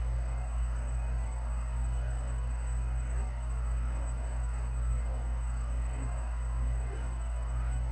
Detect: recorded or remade remade